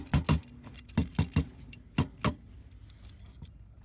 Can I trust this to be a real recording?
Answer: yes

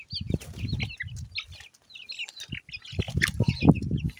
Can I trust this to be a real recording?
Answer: yes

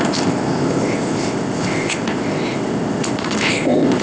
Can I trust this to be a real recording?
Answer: no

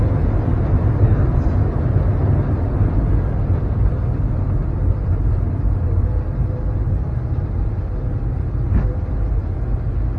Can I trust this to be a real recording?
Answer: yes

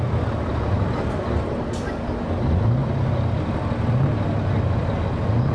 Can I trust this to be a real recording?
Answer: yes